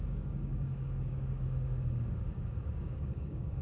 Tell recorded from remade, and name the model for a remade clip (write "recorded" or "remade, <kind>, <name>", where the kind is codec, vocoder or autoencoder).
remade, codec, DAC